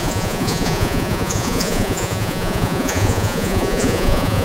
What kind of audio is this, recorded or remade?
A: remade